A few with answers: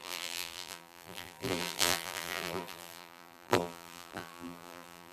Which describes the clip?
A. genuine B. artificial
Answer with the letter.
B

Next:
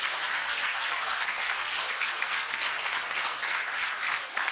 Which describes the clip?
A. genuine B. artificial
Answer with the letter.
B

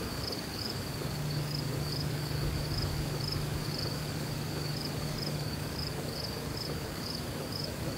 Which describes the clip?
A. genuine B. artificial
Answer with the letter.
B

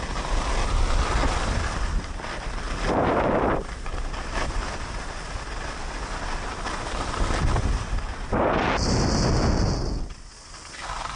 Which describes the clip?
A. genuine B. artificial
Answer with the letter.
A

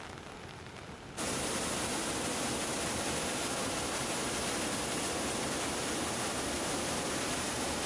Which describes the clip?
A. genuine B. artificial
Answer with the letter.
A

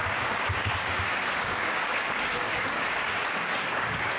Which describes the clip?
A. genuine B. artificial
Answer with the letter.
B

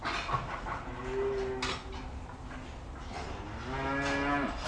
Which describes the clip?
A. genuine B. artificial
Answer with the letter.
A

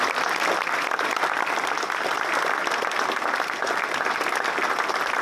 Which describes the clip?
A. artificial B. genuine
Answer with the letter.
A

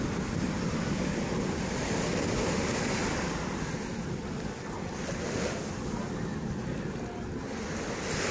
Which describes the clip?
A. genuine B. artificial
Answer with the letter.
A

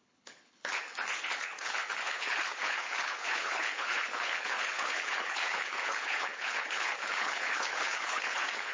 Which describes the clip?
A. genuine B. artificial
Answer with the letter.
B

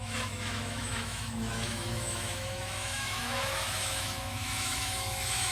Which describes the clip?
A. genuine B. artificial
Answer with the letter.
B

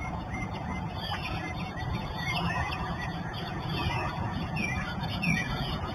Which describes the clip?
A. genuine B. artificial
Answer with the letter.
B